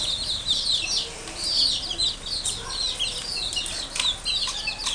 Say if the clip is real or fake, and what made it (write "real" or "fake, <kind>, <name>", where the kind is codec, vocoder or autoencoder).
real